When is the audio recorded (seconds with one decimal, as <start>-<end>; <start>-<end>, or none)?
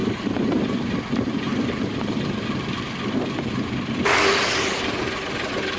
3.5-5.8